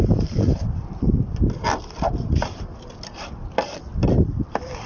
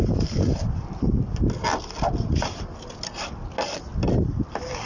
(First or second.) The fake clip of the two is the first